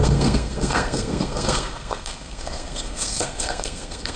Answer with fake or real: fake